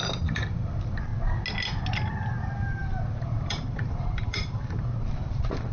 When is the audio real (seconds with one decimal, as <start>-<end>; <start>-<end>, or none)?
1.1-2.3